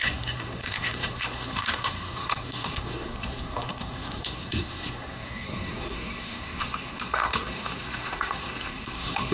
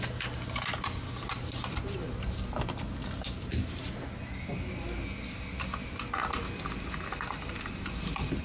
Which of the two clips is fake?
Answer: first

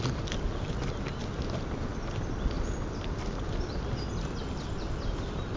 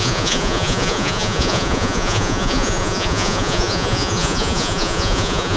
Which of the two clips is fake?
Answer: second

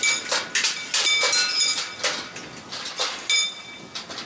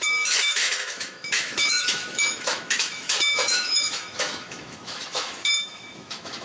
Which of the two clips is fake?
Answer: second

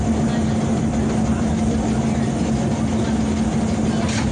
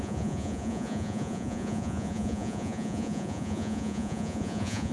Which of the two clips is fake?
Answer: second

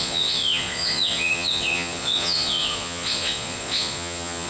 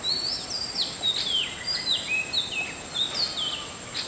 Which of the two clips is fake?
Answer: first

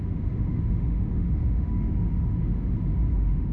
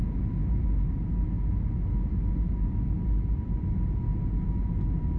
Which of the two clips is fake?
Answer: first